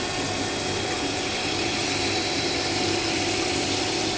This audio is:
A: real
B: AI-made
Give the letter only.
B